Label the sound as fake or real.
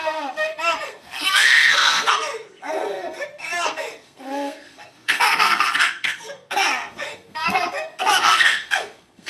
fake